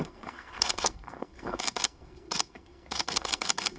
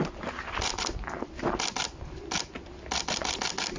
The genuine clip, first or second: second